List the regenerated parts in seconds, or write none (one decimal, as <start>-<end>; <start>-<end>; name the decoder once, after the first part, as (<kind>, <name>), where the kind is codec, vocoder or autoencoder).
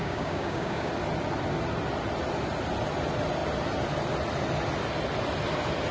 0.0-0.9 (codec, DAC)